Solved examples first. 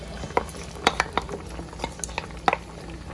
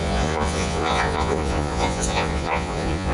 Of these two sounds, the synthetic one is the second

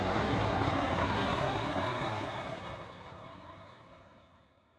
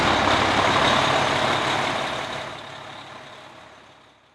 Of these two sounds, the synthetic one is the first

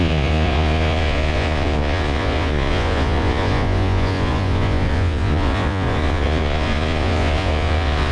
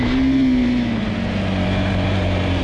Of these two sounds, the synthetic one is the first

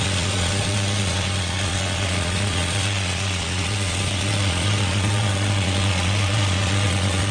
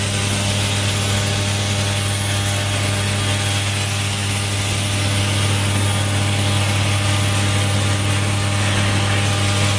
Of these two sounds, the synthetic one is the first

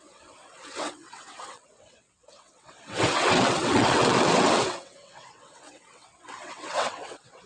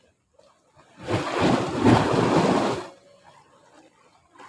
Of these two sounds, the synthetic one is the first